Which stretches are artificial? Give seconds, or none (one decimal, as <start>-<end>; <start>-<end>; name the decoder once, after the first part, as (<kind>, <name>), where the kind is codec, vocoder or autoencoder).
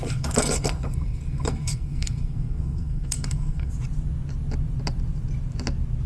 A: 0.0-3.7 (codec, SNAC)